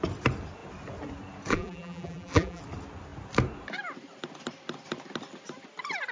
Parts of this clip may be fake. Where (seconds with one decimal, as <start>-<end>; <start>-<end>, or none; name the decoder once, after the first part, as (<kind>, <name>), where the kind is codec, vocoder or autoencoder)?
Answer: 1.5-2.6 (vocoder, BigVGAN v2)